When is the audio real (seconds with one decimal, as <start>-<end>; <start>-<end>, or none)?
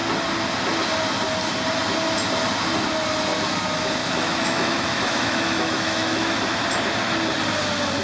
0.0-4.0; 6.4-8.0